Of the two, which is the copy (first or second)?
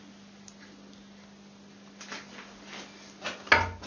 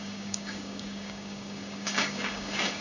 second